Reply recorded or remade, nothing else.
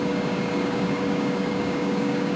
remade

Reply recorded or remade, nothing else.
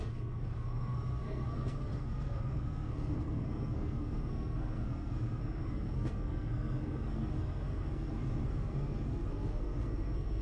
remade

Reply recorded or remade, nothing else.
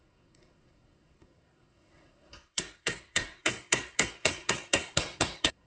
remade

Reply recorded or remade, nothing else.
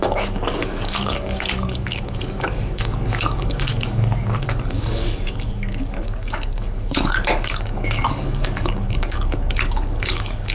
remade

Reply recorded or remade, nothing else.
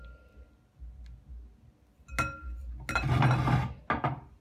recorded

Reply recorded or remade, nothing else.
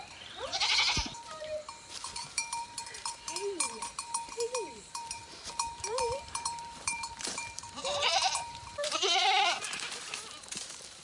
remade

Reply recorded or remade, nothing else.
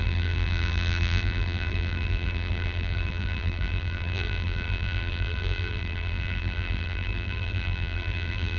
remade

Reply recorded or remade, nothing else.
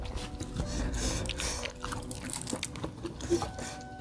recorded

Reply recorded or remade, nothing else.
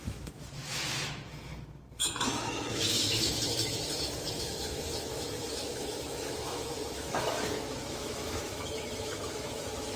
remade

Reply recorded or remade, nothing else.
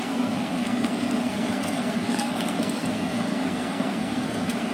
remade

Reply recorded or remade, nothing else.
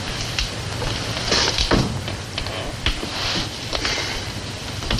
remade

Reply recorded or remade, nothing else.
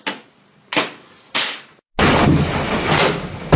recorded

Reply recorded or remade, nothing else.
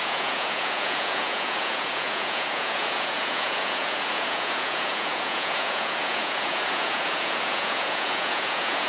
remade